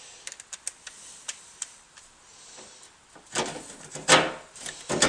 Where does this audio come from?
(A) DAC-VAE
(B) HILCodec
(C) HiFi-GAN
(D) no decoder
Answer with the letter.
D